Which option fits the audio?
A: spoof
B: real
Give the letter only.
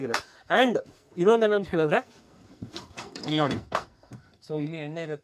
A